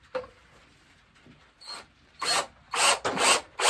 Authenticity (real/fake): real